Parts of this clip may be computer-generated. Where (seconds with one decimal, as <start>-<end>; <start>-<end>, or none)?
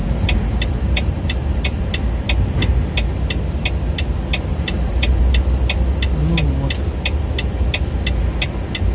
0.0-1.9; 4.5-5.2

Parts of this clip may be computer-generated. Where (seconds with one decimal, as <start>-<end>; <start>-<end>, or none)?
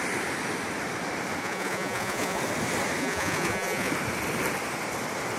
1.4-2.4; 3.0-3.9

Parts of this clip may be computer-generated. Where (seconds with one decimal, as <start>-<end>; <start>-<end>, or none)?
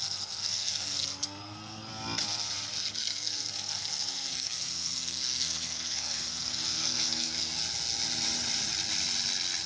0.0-1.9; 2.8-7.6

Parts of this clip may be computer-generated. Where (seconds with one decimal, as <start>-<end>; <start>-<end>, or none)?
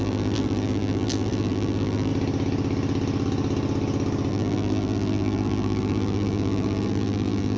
0.0-2.1; 4.3-7.6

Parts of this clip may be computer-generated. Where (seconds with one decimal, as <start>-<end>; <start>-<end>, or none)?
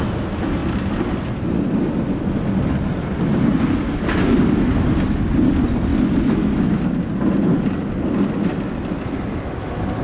none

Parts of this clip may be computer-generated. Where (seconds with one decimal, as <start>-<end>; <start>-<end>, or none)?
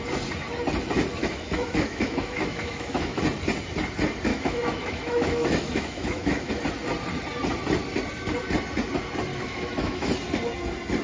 1.2-3.2; 4.3-6.5; 9.3-10.1